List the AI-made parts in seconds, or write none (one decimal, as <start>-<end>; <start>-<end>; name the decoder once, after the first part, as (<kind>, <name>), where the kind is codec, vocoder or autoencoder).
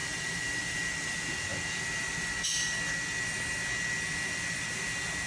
none